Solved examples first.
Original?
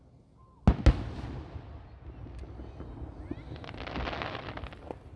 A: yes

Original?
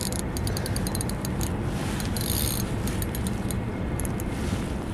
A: no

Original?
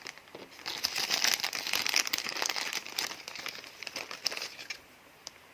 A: yes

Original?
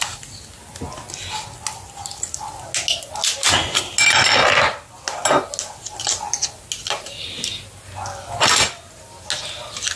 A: yes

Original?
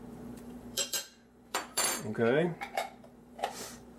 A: no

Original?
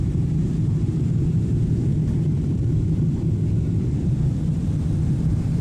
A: no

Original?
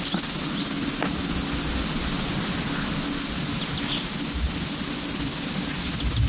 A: yes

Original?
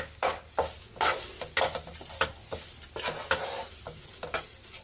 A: yes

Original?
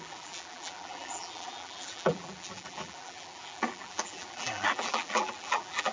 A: no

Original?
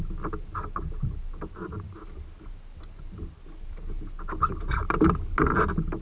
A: yes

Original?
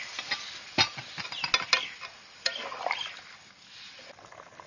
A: yes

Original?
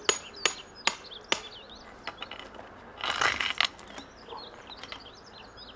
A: yes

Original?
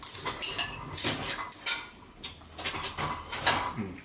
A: yes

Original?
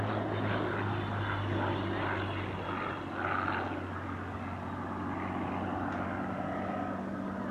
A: yes